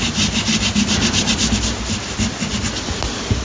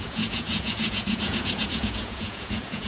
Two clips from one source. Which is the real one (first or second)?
first